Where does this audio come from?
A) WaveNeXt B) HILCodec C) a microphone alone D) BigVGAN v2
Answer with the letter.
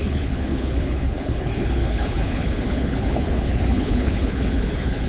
B